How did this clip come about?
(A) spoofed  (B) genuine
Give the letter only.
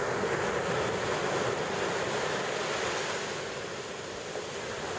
B